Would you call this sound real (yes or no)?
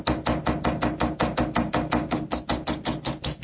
yes